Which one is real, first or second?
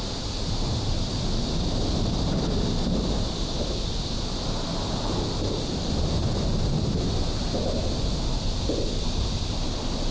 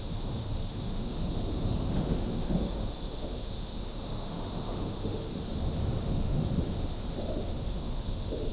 first